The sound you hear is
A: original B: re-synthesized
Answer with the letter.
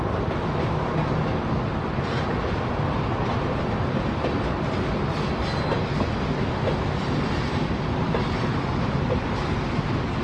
A